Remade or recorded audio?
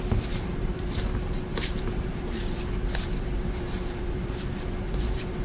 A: remade